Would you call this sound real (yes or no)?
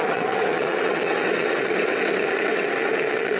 no